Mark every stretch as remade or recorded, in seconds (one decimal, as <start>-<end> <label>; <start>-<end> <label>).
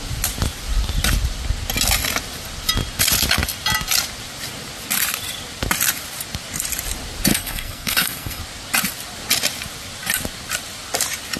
0.0-7.3 recorded; 7.3-8.4 remade; 8.4-11.4 recorded